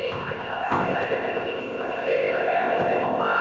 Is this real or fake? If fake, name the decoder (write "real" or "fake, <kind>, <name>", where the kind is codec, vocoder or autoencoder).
fake, codec, ZipCodec